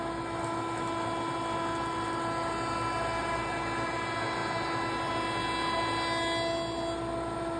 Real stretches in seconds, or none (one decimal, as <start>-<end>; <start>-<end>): 0.0-7.6